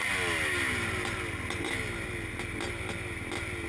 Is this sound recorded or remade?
recorded